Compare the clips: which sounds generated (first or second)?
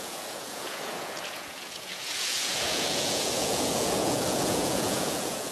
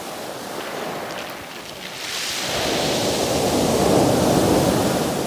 first